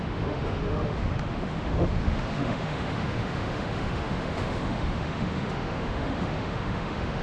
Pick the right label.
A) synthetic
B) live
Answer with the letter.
A